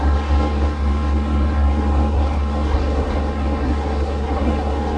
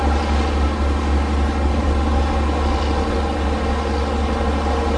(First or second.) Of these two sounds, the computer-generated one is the first